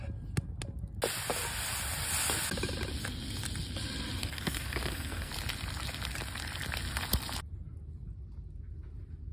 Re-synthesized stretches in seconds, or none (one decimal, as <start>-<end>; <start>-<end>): 4.2-5.3